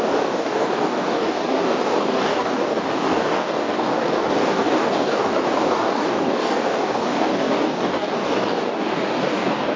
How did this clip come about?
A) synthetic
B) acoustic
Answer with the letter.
A